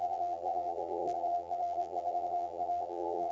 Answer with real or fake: fake